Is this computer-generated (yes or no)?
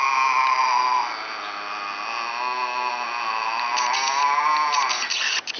no